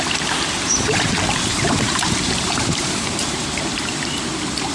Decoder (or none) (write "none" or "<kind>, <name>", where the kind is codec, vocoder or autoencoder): vocoder, BigVGAN v2